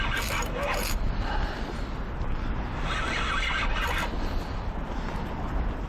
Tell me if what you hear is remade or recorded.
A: recorded